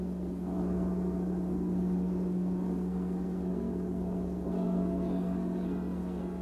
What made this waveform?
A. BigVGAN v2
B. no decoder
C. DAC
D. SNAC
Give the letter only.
D